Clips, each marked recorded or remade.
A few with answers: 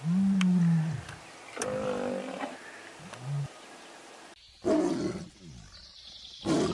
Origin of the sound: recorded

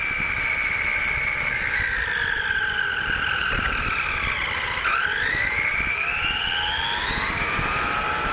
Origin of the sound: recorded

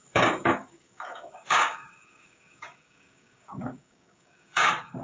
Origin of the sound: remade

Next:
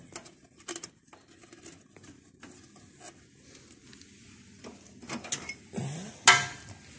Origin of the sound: recorded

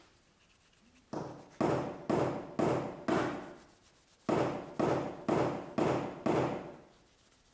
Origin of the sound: recorded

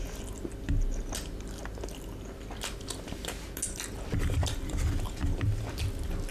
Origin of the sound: recorded